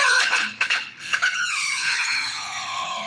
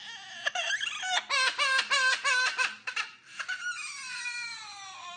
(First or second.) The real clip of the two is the second